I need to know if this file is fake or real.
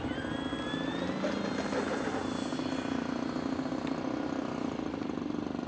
real